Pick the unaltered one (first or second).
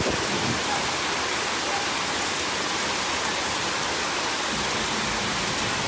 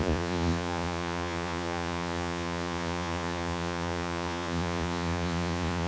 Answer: first